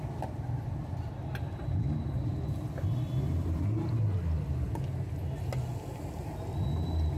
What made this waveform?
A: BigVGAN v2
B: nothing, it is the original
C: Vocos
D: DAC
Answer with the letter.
B